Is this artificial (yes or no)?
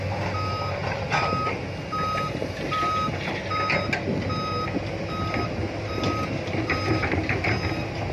no